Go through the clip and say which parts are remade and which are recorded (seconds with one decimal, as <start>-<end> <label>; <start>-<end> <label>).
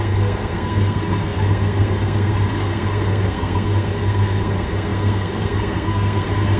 0.0-6.6 remade